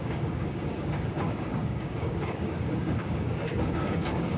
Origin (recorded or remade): remade